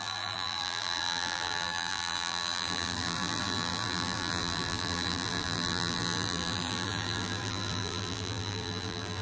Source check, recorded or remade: remade